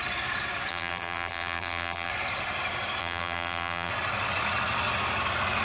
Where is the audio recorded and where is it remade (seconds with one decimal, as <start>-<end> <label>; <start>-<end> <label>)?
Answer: 0.0-0.7 recorded; 0.7-2.1 remade; 2.1-3.0 recorded; 3.0-3.9 remade; 3.9-5.6 recorded